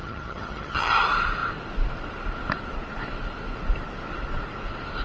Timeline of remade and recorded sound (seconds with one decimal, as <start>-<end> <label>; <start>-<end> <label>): 0.0-0.9 remade; 0.9-5.0 recorded